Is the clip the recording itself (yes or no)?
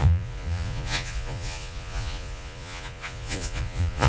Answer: no